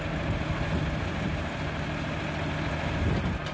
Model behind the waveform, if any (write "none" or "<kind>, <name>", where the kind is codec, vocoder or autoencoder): none